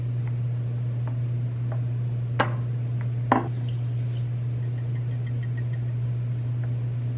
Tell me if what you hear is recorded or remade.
recorded